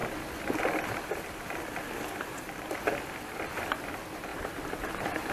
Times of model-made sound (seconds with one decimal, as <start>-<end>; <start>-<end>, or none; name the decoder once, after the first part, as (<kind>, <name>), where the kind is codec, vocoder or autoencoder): 4.3-5.3 (vocoder, BigVGAN v2)